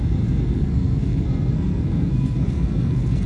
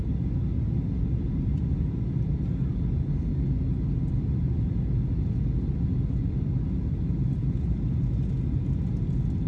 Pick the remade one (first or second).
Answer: first